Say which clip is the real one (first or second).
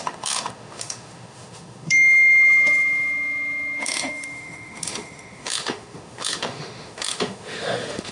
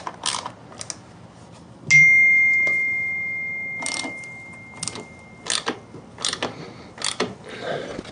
second